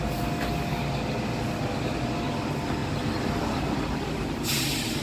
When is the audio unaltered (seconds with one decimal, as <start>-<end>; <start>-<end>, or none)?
0.0-5.0